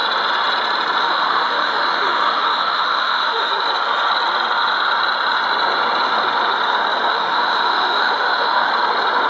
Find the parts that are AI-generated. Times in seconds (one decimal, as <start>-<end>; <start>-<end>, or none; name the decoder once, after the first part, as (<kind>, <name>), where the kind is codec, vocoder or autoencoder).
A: 1.0-3.5 (autoencoder, DAC-VAE); 7.1-8.7